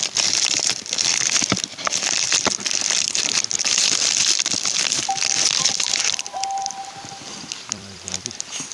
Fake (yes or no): yes